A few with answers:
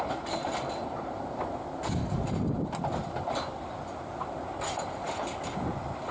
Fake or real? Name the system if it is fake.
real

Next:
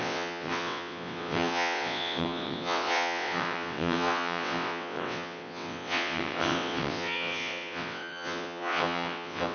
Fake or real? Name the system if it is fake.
fake, vocoder, WaveNeXt